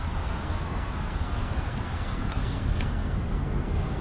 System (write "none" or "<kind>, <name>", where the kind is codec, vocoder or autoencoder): codec, SNAC